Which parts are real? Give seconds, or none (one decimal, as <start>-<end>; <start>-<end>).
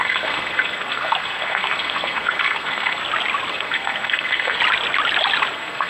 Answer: 3.0-3.5; 4.6-5.5